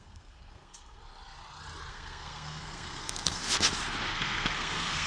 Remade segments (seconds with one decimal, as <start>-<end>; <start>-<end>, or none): 0.0-1.0; 1.9-3.4; 4.1-5.1